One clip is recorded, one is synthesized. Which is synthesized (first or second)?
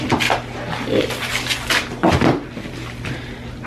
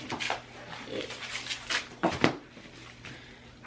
second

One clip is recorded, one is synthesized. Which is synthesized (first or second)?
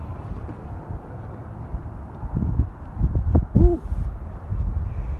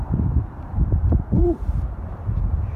second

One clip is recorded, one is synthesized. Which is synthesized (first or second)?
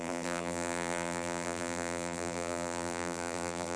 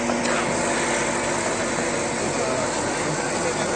first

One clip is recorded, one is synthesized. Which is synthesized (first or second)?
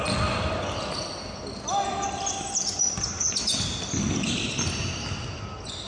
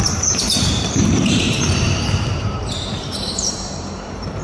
second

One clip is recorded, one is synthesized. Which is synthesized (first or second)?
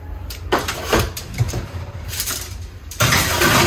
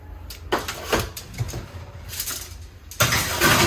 first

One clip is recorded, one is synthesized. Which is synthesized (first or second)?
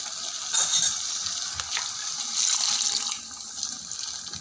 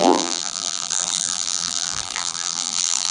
second